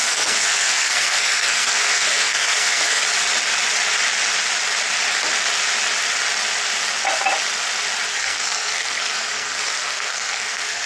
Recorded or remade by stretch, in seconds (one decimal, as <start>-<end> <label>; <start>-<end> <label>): 0.0-3.0 remade; 3.0-8.1 recorded; 8.1-10.9 remade